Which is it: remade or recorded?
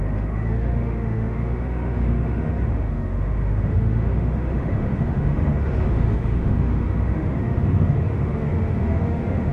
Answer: remade